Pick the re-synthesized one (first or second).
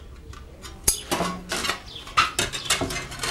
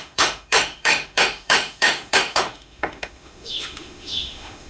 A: second